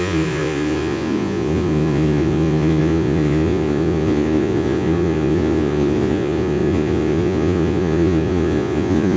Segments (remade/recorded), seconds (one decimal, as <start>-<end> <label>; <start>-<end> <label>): 0.0-9.2 remade